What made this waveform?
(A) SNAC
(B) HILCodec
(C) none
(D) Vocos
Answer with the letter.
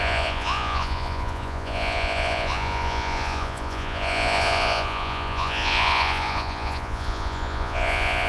D